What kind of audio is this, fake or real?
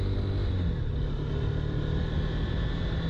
real